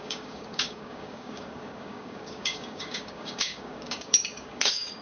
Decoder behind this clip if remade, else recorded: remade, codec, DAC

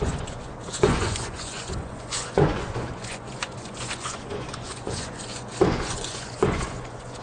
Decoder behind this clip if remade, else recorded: remade, vocoder, Vocos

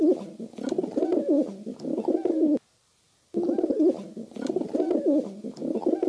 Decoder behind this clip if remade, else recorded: recorded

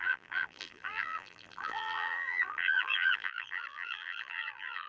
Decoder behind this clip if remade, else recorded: remade, vocoder, BigVGAN v2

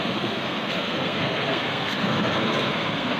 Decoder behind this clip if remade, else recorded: remade, codec, SNAC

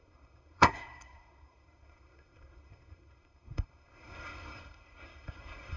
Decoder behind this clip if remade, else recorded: remade, codec, SNAC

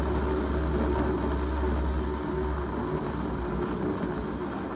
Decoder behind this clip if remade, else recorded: recorded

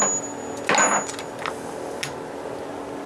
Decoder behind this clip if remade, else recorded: recorded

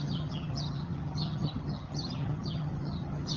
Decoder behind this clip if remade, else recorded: remade, vocoder, HiFi-GAN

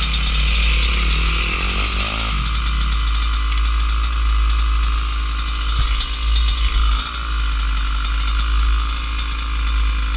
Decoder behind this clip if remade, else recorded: recorded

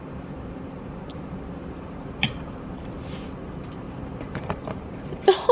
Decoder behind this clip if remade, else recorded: remade, vocoder, BigVGAN v2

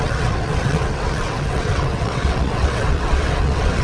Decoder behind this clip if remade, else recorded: remade, vocoder, WaveNeXt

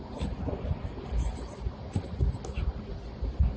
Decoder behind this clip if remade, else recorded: recorded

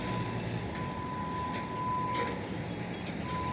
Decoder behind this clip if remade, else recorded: recorded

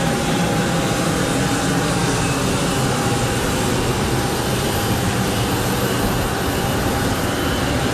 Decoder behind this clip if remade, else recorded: recorded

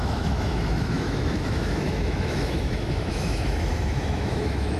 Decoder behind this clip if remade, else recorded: remade, autoencoder, DAC-VAE